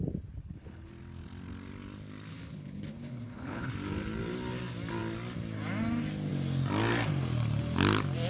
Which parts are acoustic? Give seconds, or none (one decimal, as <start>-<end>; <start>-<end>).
0.0-0.4; 0.9-2.3; 3.7-8.3

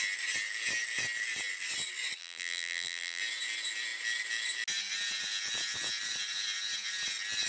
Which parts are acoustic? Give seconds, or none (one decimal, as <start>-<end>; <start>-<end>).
0.0-2.2; 3.2-7.5

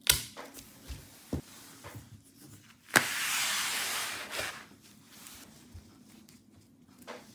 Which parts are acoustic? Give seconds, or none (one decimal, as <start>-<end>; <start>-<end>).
0.0-7.3

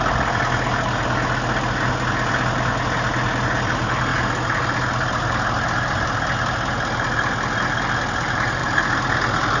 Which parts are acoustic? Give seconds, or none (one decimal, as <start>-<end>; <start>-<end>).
0.0-9.6

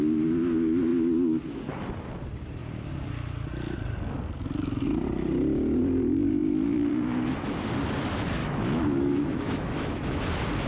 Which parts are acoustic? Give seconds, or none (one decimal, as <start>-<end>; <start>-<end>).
0.0-8.4; 10.2-10.7

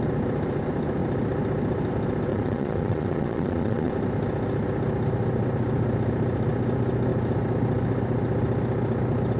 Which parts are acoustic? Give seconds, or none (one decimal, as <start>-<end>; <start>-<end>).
0.0-2.3; 3.9-9.4

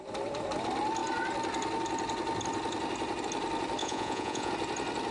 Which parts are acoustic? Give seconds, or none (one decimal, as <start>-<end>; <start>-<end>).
0.0-3.8; 4.5-5.1